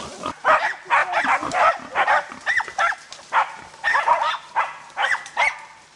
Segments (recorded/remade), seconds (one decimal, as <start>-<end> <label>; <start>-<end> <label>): 0.0-6.0 recorded